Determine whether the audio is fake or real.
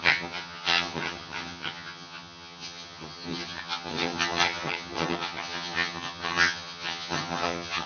fake